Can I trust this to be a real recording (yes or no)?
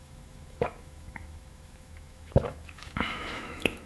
no